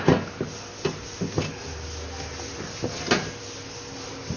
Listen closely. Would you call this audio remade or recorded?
recorded